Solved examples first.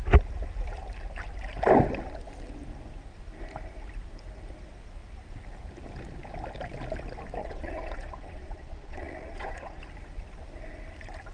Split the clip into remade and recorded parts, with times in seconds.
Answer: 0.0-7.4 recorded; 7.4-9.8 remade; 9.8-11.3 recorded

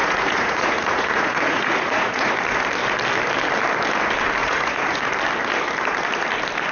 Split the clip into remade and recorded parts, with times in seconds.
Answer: 0.0-2.3 remade; 2.3-4.4 recorded; 4.4-5.1 remade; 5.1-6.7 recorded